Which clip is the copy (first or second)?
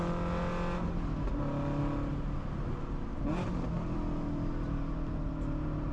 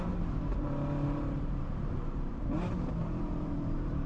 second